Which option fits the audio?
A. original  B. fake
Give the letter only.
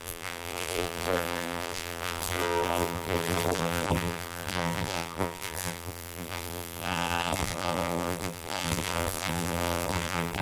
B